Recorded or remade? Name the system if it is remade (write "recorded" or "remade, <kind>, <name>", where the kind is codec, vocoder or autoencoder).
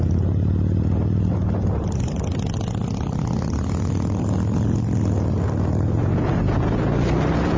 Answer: recorded